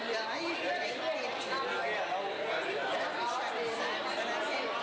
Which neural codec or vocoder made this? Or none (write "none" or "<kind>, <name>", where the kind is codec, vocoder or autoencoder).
none